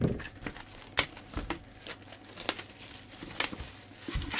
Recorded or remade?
recorded